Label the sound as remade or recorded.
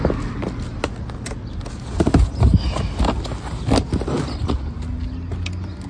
recorded